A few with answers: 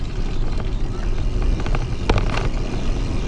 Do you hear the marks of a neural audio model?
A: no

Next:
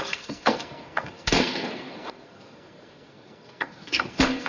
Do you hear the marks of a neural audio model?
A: yes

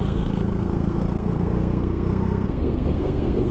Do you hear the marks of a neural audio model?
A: yes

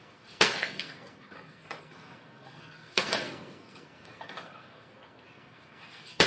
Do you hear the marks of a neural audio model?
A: yes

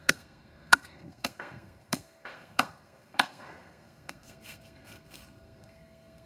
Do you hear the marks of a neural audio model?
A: yes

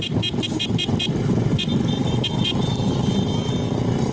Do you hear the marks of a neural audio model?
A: no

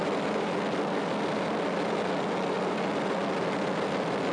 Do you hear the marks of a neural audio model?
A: no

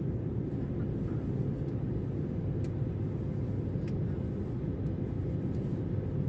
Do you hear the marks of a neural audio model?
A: no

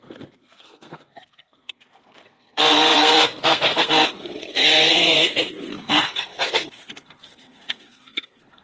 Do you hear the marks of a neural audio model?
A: yes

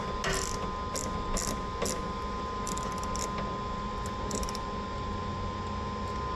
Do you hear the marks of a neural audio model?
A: no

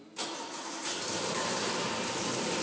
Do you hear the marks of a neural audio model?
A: no